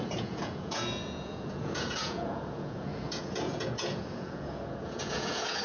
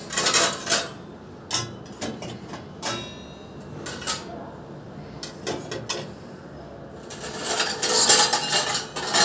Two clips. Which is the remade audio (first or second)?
first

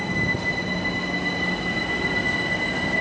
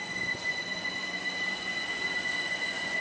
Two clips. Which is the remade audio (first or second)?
second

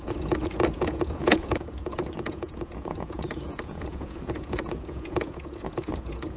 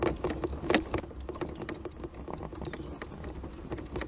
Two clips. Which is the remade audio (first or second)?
first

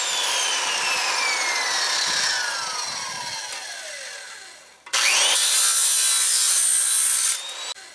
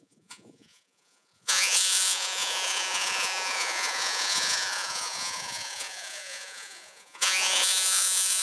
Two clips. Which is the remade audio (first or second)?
second